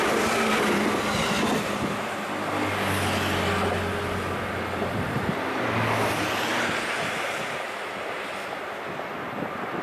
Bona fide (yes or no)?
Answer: yes